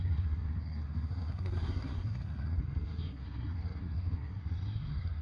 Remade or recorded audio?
remade